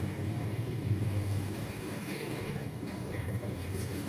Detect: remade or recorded remade